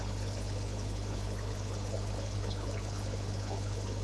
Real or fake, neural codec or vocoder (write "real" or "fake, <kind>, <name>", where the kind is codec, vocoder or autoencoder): fake, codec, HILCodec